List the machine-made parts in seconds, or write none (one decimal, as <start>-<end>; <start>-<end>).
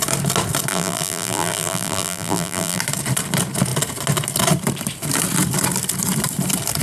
0.7-2.8